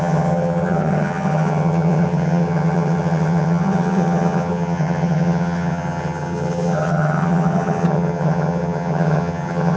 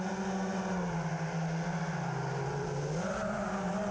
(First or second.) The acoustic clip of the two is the second